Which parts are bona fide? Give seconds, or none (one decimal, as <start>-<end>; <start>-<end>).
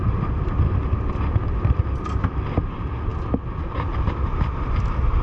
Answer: 0.0-5.2